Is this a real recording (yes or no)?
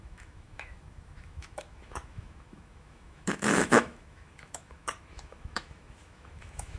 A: no